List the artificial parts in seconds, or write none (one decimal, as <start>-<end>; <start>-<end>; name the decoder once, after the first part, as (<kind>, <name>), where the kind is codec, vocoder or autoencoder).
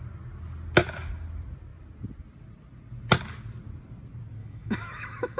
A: 4.4-5.4 (autoencoder, DAC-VAE)